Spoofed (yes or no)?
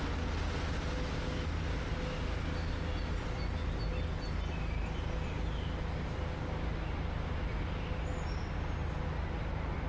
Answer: no